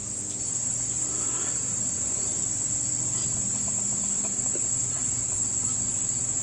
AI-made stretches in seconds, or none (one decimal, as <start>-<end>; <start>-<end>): 0.0-2.8; 3.2-4.9